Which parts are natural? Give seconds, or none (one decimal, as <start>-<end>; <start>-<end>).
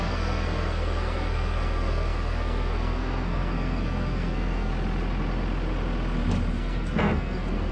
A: 4.7-6.5